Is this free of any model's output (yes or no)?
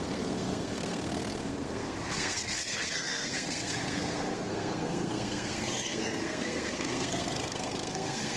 no